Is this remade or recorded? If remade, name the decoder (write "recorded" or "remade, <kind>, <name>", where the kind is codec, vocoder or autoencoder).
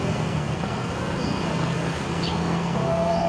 remade, codec, SNAC